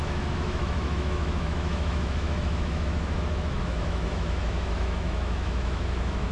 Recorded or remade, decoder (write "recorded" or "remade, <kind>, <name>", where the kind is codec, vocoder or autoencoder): remade, autoencoder, DAC-VAE